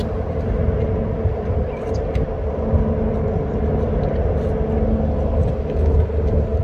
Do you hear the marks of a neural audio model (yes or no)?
no